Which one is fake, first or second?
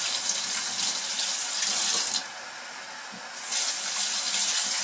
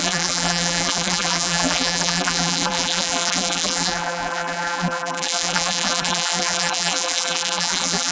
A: second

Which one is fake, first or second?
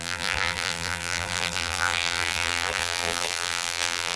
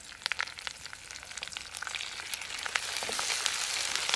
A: first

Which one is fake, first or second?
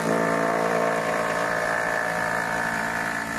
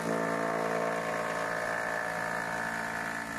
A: first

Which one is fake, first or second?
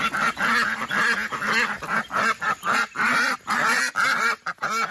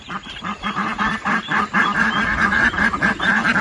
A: second